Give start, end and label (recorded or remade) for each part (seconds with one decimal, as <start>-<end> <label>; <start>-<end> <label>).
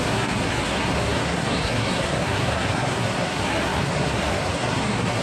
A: 0.0-5.2 remade